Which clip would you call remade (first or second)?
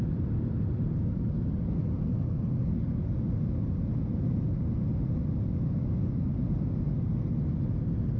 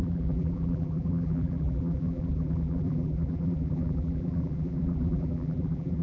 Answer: second